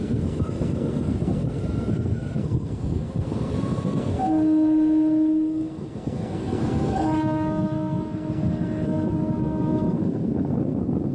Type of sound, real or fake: fake